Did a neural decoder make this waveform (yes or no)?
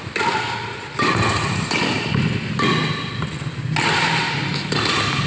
no